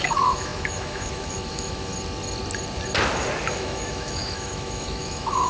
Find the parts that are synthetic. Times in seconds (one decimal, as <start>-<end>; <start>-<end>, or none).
0.0-1.9; 3.5-5.5